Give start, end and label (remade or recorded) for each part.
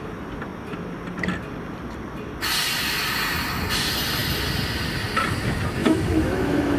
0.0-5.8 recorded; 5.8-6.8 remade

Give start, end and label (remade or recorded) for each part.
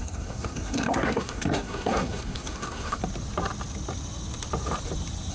0.0-3.0 remade; 3.0-5.3 recorded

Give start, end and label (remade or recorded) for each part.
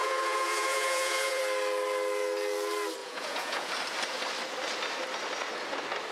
0.0-1.4 remade; 1.4-3.0 recorded; 3.0-3.7 remade; 3.7-6.1 recorded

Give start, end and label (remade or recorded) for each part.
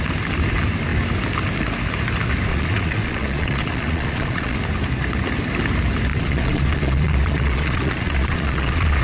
0.0-2.5 recorded; 2.5-4.6 remade; 4.6-6.1 recorded; 6.1-9.0 remade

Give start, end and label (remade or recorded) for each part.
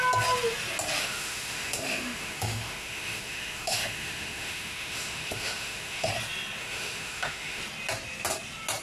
0.0-1.0 recorded; 1.0-6.1 remade; 6.1-6.6 recorded; 6.6-7.6 remade; 7.6-8.8 recorded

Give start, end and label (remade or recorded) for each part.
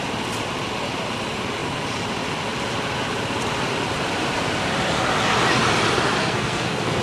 0.0-6.2 recorded; 6.2-7.0 remade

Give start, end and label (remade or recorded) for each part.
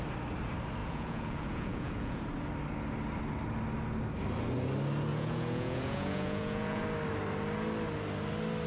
0.0-0.8 recorded; 0.8-2.2 remade; 2.2-5.1 recorded; 5.1-6.8 remade; 6.8-8.7 recorded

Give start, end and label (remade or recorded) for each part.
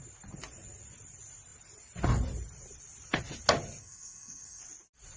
0.0-3.8 recorded; 3.8-4.6 remade; 4.6-5.2 recorded